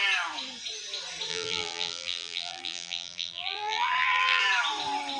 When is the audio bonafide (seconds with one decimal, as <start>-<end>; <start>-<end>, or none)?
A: 0.0-1.3; 4.4-5.2